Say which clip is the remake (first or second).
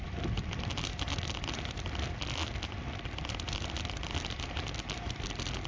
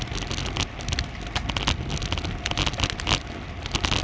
first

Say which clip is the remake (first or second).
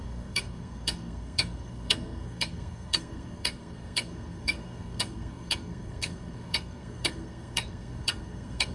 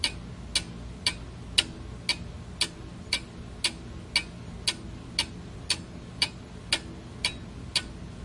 first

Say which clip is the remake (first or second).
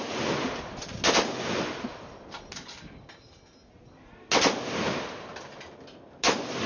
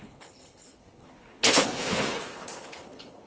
second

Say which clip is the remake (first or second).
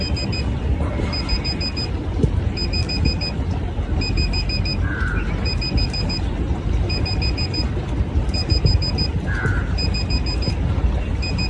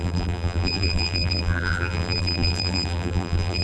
second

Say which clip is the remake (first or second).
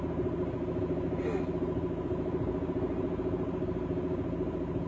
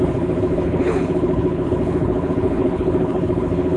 second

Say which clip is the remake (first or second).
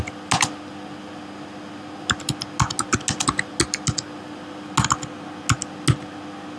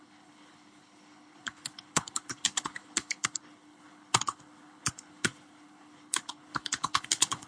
second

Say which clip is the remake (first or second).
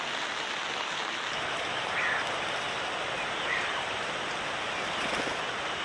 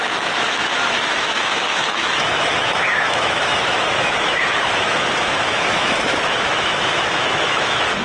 second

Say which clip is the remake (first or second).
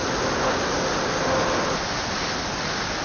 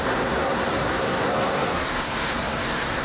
second